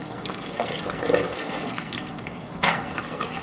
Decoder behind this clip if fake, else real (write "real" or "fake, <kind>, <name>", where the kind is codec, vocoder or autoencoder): fake, codec, SNAC